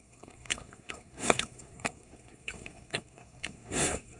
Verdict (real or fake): fake